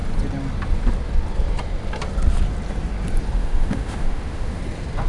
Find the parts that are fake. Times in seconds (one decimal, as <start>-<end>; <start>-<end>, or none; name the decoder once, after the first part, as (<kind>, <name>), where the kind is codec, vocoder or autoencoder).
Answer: 3.4-4.6 (autoencoder, DAC-VAE)